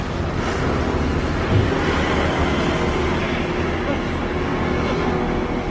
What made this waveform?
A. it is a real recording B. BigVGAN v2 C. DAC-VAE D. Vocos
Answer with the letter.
A